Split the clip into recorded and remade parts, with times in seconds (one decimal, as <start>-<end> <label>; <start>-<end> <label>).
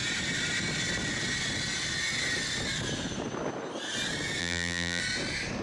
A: 0.0-4.4 recorded; 4.4-5.0 remade; 5.0-5.6 recorded